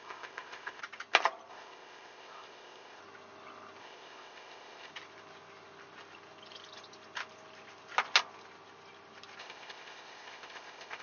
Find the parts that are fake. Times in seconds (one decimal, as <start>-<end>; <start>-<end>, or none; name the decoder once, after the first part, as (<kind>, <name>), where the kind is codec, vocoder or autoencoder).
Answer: 0.0-0.8 (codec, ZipCodec); 1.5-3.0; 3.8-4.9; 9.4-11.0